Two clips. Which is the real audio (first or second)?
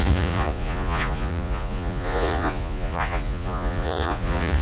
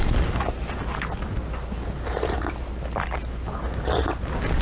second